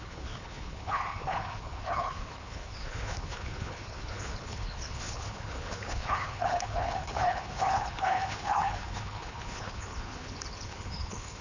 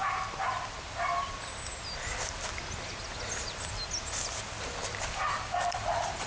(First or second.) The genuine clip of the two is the second